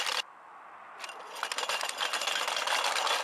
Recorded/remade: recorded